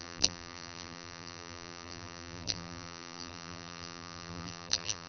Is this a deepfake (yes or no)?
yes